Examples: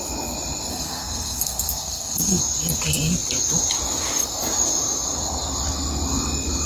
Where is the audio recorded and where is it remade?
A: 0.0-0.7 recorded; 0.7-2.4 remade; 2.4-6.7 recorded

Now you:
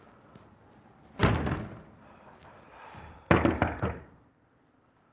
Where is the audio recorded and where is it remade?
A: 0.0-5.1 recorded

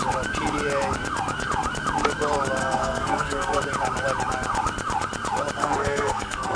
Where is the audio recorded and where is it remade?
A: 0.0-2.6 recorded; 2.6-3.6 remade; 3.6-5.6 recorded; 5.6-6.6 remade

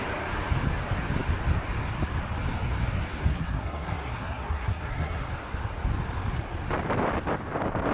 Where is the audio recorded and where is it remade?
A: 0.0-3.3 recorded; 3.3-5.3 remade; 5.3-7.9 recorded

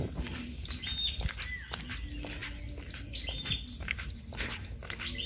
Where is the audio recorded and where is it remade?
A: 0.0-5.3 recorded

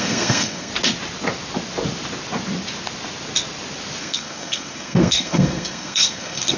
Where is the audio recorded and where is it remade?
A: 0.0-0.7 remade; 0.7-4.0 recorded; 4.0-6.6 remade

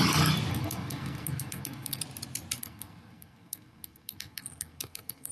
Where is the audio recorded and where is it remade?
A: 0.0-0.5 recorded; 0.5-2.0 remade; 2.0-2.6 recorded; 2.6-5.3 remade